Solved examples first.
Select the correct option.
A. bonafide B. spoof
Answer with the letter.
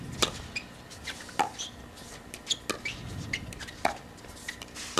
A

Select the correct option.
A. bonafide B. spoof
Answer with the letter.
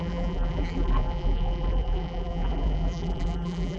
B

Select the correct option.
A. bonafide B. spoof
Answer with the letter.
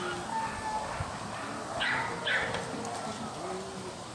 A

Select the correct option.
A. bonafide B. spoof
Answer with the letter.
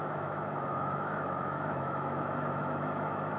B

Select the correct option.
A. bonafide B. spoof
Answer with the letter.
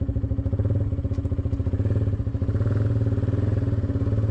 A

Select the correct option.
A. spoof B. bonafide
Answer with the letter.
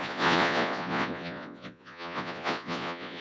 A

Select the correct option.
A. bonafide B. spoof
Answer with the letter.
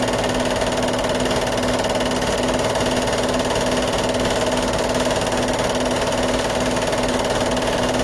A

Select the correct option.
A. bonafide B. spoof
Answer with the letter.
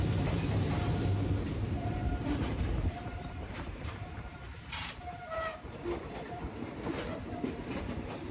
B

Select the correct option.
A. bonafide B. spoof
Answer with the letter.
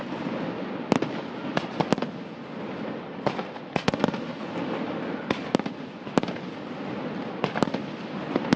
A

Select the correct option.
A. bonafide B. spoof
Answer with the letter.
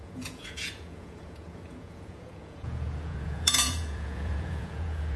B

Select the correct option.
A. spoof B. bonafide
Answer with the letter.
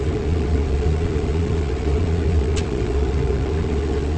A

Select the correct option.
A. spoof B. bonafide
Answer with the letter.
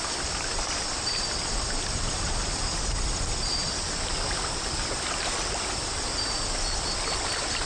B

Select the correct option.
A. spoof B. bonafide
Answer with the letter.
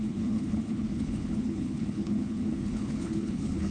A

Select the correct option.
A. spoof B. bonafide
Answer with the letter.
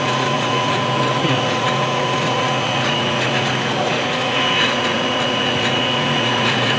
A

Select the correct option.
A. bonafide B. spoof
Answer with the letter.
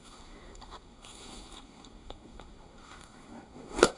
B